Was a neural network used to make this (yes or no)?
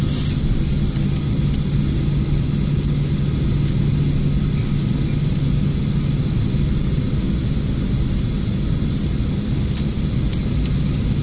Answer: no